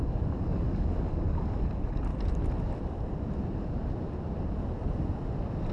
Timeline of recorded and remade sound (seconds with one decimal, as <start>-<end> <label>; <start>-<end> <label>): 0.0-2.1 remade; 2.1-5.7 recorded